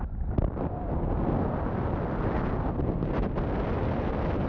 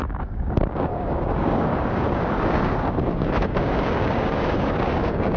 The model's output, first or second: second